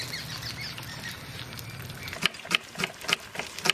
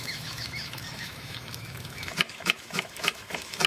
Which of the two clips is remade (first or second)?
second